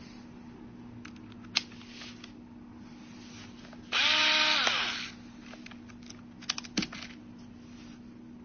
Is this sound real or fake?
real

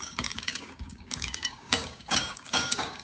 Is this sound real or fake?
fake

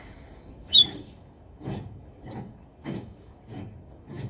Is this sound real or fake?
fake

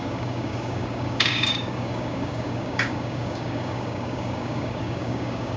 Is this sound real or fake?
fake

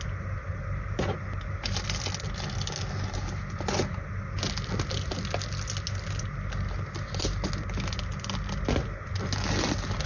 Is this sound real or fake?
real